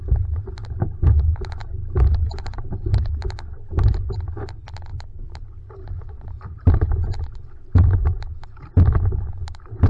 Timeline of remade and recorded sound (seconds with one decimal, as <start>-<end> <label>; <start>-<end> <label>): 0.0-1.6 recorded; 1.6-3.1 remade; 3.1-4.9 recorded; 4.9-6.7 remade; 6.7-9.9 recorded